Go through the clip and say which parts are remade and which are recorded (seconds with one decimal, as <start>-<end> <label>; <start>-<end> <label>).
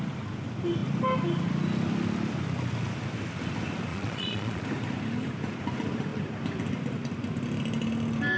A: 0.0-3.9 recorded; 3.9-4.6 remade; 4.6-8.4 recorded